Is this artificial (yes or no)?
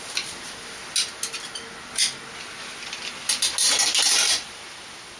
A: no